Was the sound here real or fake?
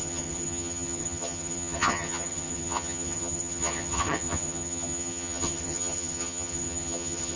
fake